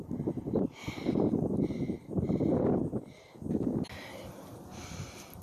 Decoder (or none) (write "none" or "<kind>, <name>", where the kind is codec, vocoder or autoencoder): none